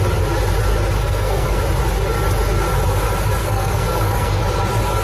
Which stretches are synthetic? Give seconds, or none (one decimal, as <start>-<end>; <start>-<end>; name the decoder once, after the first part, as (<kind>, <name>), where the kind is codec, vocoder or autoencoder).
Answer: 1.0-1.6 (codec, SNAC); 3.4-4.4